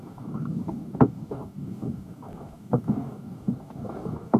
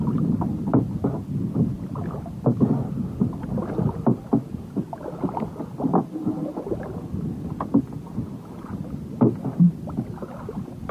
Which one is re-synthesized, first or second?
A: first